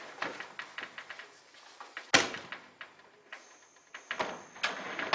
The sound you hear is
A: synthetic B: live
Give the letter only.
B